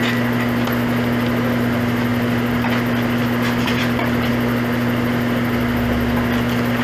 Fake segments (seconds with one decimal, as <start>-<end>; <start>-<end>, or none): 2.1-4.3